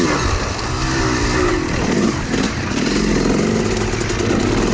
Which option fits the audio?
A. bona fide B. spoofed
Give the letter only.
A